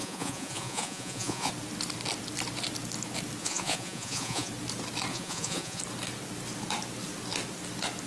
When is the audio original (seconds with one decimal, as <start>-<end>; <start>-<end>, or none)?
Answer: 1.5-3.4; 4.5-5.1; 5.8-8.1